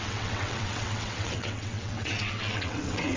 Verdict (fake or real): fake